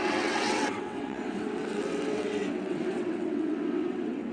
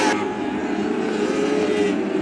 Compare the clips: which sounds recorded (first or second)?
second